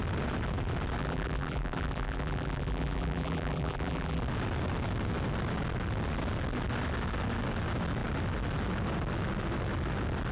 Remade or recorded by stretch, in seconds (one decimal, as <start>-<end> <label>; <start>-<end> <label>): 0.0-1.0 recorded; 1.0-4.2 remade; 4.2-10.3 recorded